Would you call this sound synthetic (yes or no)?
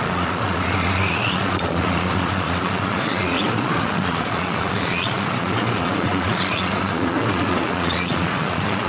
yes